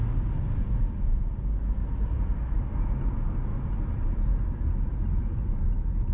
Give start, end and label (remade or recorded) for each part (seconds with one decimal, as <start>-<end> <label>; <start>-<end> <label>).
0.0-1.8 recorded; 1.8-2.8 remade; 2.8-3.5 recorded; 3.5-4.0 remade; 4.0-4.9 recorded; 4.9-5.6 remade; 5.6-6.1 recorded